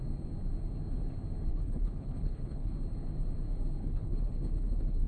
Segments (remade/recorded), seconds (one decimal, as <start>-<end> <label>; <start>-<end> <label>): 0.0-1.5 recorded; 1.5-2.7 remade; 2.7-3.8 recorded; 3.8-5.1 remade